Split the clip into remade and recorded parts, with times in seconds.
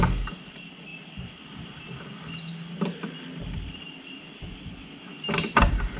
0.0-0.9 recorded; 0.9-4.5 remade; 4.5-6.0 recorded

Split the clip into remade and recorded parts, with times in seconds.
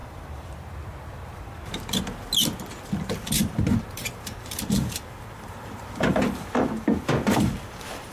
0.0-0.6 remade; 0.6-3.4 recorded; 3.4-8.1 remade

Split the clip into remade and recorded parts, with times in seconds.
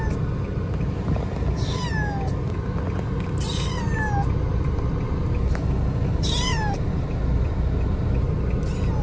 0.0-9.0 recorded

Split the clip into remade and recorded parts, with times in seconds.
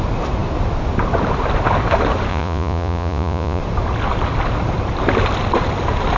0.0-2.3 recorded; 2.3-3.6 remade; 3.6-6.2 recorded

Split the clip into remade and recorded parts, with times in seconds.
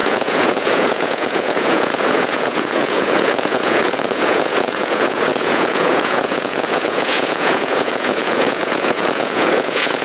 0.0-10.0 remade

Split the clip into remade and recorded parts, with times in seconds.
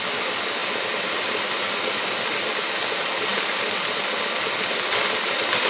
0.0-5.7 recorded